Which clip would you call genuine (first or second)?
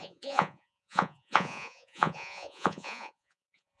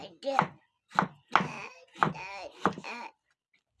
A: second